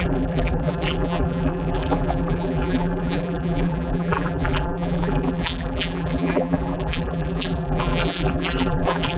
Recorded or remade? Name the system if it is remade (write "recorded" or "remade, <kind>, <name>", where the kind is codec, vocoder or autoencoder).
remade, vocoder, BigVGAN v2